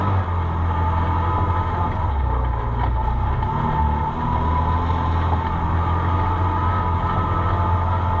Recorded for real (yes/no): yes